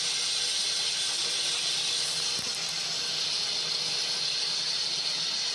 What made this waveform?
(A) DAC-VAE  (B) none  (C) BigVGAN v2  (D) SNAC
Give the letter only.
B